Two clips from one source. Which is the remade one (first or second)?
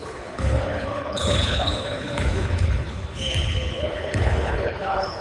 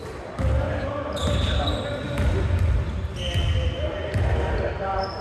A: first